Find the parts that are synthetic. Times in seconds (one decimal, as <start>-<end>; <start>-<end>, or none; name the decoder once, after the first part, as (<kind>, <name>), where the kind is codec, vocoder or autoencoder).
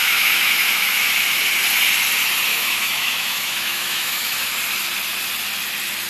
0.0-1.4 (autoencoder, DAC-VAE); 2.5-4.5